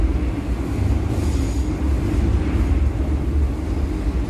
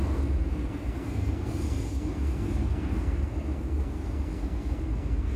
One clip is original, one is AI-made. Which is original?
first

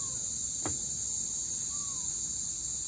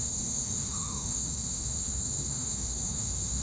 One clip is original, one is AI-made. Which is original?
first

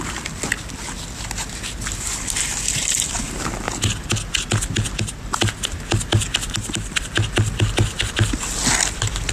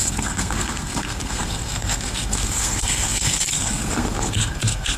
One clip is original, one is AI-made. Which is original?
first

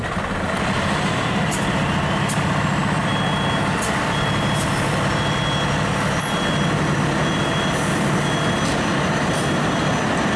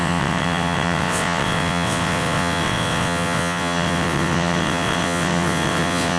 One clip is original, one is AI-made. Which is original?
first